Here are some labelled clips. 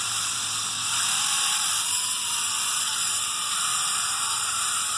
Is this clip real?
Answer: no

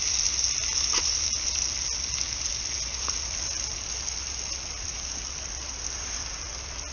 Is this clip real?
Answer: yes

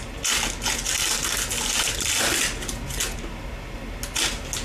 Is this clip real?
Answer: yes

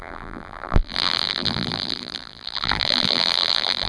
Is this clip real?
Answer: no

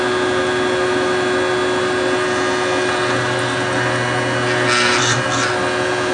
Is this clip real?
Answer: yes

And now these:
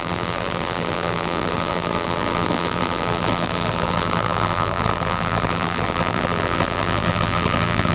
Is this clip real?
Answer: no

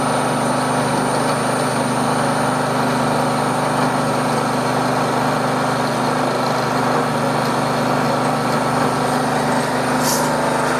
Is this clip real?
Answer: yes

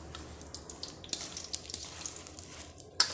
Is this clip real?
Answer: yes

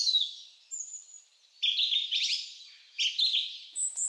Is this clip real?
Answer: yes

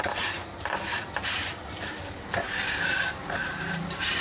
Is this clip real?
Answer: no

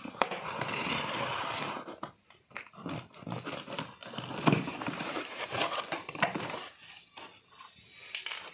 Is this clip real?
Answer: yes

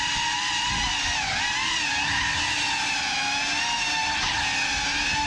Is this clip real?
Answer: yes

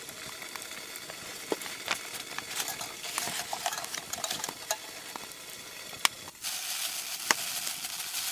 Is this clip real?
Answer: yes